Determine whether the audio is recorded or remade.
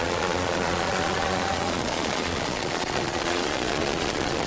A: remade